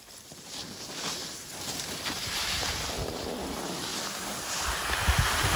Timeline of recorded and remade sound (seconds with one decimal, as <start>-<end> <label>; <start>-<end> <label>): 0.0-1.2 recorded; 1.2-3.3 remade; 3.3-3.9 recorded; 3.9-4.5 remade; 4.5-5.6 recorded